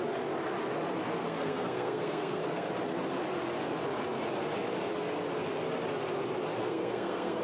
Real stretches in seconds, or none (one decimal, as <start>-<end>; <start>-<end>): 0.0-1.2; 2.7-6.6